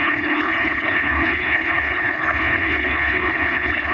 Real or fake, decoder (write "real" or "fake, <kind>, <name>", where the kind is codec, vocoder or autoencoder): fake, codec, HILCodec